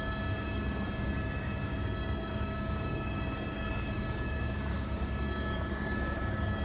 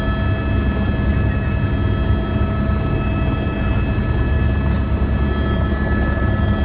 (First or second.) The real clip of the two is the second